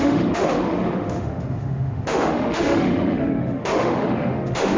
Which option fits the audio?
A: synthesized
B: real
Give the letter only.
A